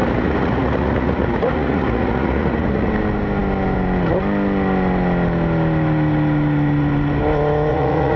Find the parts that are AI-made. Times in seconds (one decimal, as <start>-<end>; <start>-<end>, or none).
0.0-2.9; 7.7-8.2